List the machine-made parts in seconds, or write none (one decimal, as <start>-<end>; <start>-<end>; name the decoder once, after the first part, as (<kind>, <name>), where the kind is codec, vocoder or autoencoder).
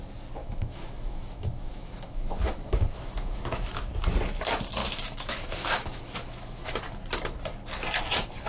0.4-3.9 (autoencoder, DAC-VAE); 4.8-6.8